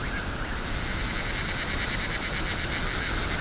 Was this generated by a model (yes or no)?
no